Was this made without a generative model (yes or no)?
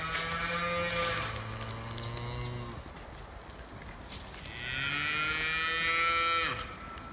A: yes